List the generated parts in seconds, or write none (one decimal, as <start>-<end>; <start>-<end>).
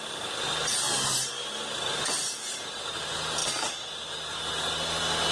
none